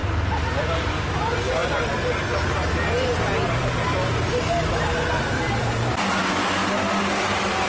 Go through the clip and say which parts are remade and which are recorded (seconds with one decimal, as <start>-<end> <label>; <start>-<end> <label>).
0.0-0.6 recorded; 0.6-1.6 remade; 1.6-5.9 recorded; 5.9-6.6 remade; 6.6-7.7 recorded